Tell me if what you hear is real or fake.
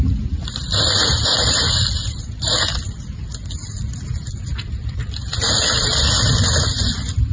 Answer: fake